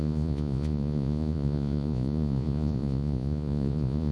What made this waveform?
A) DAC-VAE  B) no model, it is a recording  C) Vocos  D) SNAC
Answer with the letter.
C